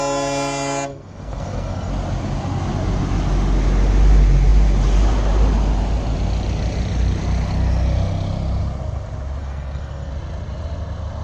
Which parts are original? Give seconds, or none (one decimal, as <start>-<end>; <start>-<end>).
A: 0.0-0.9; 1.9-9.4; 10.1-11.2